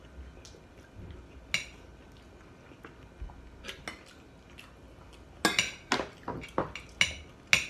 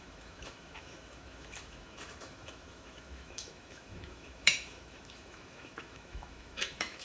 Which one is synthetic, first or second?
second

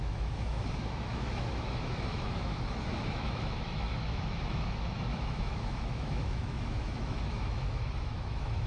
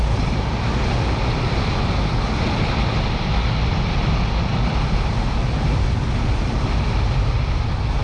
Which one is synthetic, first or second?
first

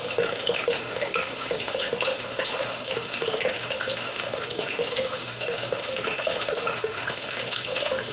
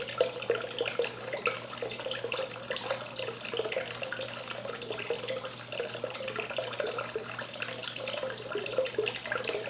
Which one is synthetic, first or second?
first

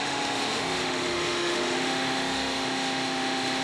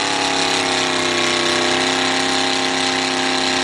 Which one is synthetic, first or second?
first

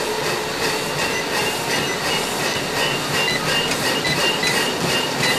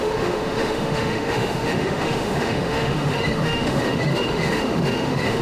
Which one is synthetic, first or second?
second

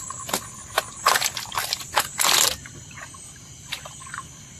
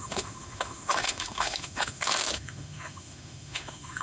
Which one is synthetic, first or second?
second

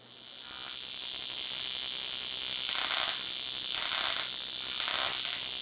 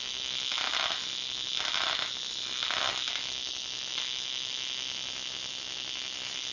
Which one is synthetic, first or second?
second